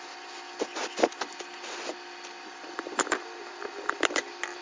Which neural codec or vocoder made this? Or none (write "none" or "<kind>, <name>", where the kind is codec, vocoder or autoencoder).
none